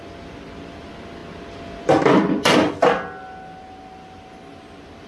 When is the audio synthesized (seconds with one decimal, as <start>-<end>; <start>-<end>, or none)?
none

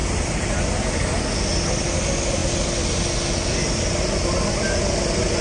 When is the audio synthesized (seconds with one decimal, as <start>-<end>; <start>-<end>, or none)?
0.0-0.6

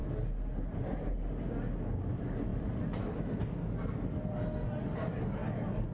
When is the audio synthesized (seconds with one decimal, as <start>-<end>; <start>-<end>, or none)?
none

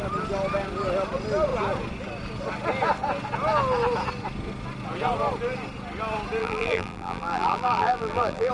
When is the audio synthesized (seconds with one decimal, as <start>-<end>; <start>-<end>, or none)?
6.4-8.5

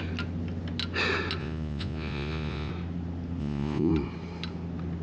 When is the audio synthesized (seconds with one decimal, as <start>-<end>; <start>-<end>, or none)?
1.4-2.7; 3.4-3.9